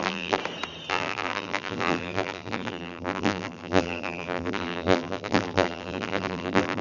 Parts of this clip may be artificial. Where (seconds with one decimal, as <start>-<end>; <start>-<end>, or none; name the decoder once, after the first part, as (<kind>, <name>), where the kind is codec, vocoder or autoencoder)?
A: 0.0-0.4 (vocoder, BigVGAN v2); 0.9-6.8

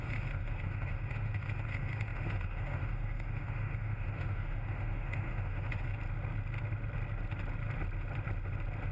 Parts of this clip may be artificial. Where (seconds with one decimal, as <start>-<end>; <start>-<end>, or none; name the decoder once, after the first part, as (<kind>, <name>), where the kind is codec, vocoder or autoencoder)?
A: 0.0-5.9 (autoencoder, DAC-VAE)

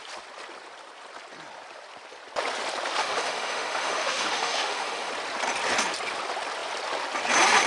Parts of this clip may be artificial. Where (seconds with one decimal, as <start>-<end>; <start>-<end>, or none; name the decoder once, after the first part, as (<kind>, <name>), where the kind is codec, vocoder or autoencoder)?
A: 3.0-5.1 (autoencoder, DAC-VAE)

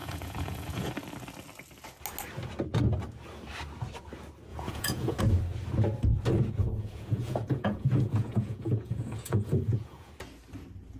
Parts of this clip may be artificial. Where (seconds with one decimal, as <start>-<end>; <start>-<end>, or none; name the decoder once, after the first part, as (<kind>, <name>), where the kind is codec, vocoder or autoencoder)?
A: 0.0-0.9 (vocoder, Vocos); 4.5-5.2; 6.6-10.1

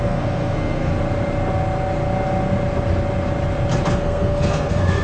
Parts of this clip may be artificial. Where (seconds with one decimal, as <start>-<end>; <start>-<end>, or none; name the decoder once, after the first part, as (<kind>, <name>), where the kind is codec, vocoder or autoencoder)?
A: 0.0-0.9 (codec, SNAC); 3.9-5.0

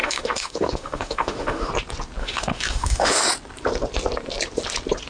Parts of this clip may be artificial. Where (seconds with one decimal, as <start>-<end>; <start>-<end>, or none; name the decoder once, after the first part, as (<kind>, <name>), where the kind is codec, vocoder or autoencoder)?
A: 0.0-1.7 (autoencoder, DAC-VAE); 2.2-3.3

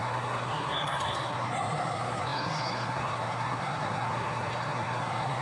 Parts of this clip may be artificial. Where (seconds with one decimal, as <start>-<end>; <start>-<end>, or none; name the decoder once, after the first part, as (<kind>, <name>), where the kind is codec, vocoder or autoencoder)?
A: 0.0-5.4 (codec, SNAC)